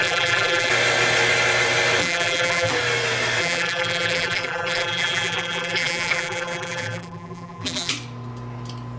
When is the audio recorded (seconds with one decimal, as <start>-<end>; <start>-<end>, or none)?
0.7-2.0; 2.7-3.4; 7.9-9.0